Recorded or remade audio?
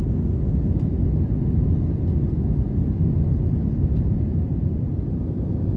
recorded